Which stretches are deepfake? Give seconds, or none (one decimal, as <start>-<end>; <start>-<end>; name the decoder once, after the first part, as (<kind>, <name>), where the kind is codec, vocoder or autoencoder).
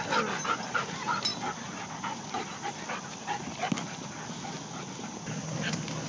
none